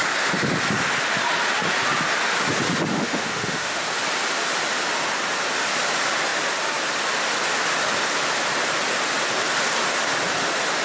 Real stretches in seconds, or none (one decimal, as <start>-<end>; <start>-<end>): 0.0-2.9; 3.8-10.8